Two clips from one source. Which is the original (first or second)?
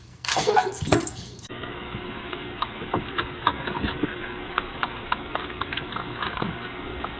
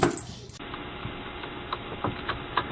second